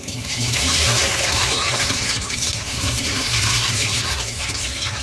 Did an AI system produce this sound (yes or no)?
yes